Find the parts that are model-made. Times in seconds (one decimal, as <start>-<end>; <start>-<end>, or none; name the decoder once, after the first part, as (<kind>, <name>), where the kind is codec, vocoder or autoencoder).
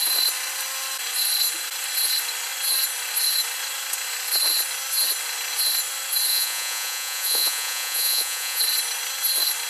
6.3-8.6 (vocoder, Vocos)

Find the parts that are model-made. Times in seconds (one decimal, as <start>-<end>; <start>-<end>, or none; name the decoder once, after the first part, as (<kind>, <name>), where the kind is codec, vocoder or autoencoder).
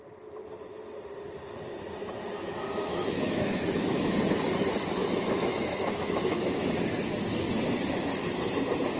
2.4-4.1 (autoencoder, DAC-VAE); 5.0-6.8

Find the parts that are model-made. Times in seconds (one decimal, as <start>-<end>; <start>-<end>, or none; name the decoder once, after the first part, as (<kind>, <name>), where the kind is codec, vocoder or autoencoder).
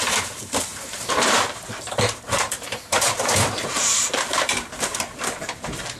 0.0-6.0 (vocoder, BigVGAN v2)